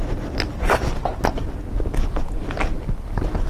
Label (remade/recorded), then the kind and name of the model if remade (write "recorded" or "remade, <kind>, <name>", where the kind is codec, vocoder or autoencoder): recorded